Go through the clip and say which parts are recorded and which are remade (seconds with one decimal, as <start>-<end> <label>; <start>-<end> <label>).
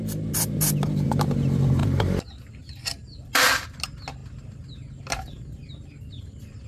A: 0.0-6.7 recorded